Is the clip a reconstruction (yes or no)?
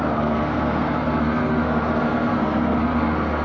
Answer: yes